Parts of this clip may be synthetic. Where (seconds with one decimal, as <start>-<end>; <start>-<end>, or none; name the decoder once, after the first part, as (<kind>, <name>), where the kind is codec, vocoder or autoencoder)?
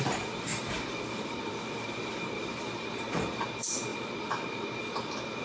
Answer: 0.0-0.5 (vocoder, BigVGAN v2); 1.0-5.4